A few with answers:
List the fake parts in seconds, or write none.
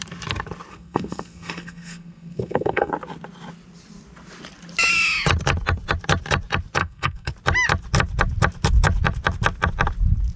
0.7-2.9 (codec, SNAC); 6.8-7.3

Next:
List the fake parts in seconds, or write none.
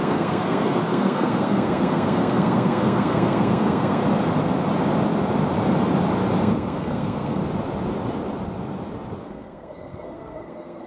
0.0-4.0 (codec, SNAC); 6.4-7.4; 9.2-10.9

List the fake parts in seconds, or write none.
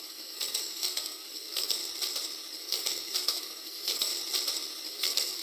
0.0-1.8 (codec, SNAC); 2.6-4.1; 4.9-5.4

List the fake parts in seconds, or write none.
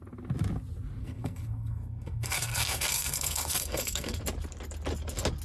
1.0-4.2 (codec, SNAC)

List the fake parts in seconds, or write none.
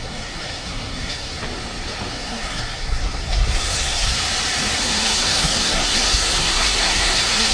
0.0-1.4 (codec, SNAC); 2.1-4.2; 4.8-7.5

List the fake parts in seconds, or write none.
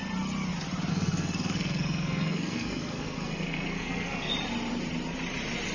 0.9-4.3 (codec, SNAC)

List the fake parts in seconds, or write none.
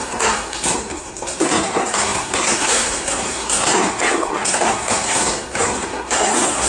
0.0-6.7 (codec, SNAC)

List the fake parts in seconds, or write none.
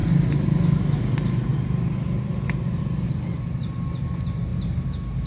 none